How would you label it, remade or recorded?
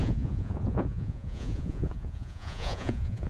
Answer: remade